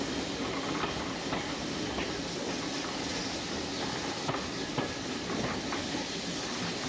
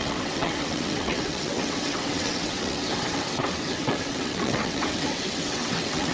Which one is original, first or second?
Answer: first